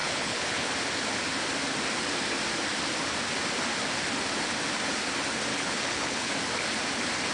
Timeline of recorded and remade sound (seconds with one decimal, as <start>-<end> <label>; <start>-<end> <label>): 0.0-0.7 remade; 0.7-5.5 recorded; 5.5-6.3 remade; 6.3-7.3 recorded

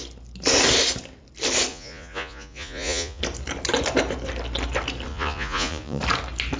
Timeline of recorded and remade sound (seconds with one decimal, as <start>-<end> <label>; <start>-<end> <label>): 0.0-1.7 recorded; 1.7-3.2 remade; 3.2-5.1 recorded; 5.1-6.0 remade; 6.0-6.6 recorded

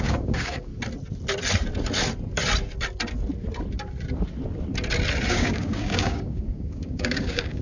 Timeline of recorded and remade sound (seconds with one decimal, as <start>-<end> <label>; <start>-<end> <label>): 0.0-0.7 remade; 0.7-5.3 recorded; 5.3-7.6 remade